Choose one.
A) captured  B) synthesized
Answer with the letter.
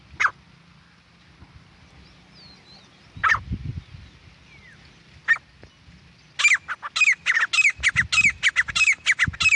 A